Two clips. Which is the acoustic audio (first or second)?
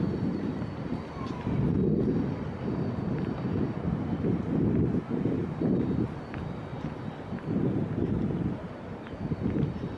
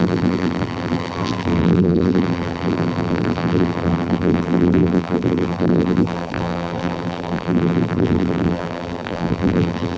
first